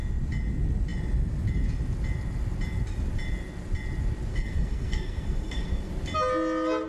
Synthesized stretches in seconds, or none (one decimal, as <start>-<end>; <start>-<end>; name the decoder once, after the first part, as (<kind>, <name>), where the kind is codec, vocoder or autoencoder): 4.3-5.9 (codec, SNAC)